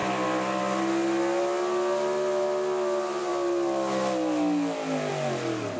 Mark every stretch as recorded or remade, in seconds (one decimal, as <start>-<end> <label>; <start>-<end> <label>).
0.0-5.8 recorded